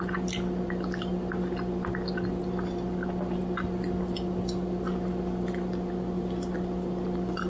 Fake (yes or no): no